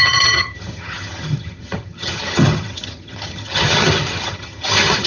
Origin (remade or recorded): remade